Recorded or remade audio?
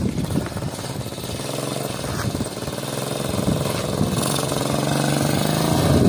recorded